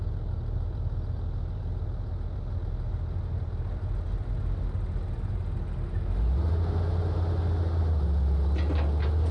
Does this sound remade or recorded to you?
recorded